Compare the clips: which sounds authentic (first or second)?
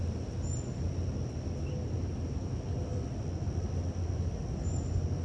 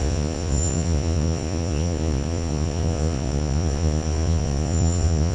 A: first